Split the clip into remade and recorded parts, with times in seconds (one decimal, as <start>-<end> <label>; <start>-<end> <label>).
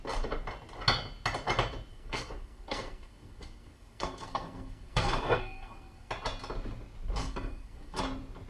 0.0-1.9 recorded; 1.9-6.1 remade; 6.1-7.2 recorded; 7.2-8.0 remade; 8.0-8.5 recorded